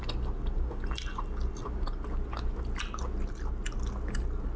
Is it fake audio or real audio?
real